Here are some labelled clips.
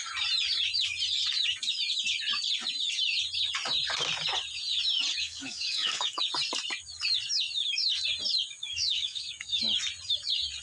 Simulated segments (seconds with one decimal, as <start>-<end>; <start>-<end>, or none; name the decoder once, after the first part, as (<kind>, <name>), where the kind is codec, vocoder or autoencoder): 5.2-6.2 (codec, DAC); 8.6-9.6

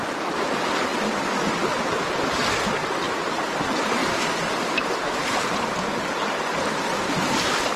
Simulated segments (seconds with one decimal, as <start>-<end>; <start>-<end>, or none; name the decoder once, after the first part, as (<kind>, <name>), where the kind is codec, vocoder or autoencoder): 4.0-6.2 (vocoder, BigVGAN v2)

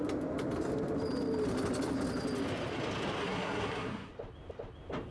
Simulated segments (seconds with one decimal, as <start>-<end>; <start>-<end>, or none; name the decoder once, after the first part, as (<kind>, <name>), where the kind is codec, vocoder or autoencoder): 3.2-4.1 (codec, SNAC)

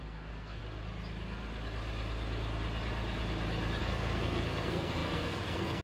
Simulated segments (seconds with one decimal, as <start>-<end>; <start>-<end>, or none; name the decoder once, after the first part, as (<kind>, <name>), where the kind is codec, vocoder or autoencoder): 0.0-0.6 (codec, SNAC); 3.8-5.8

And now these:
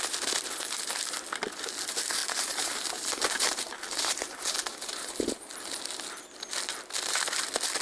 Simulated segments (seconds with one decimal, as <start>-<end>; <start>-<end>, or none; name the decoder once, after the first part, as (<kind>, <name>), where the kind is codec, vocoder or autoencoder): 2.2-5.5 (vocoder, BigVGAN v2)